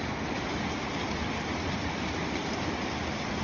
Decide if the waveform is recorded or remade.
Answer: recorded